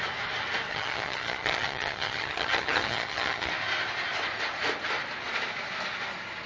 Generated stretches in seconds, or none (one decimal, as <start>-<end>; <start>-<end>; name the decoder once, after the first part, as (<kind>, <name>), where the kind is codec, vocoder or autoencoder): 0.7-3.5 (vocoder, HiFi-GAN)